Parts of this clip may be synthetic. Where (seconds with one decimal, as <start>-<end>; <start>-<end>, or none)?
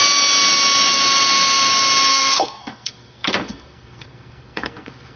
2.1-5.2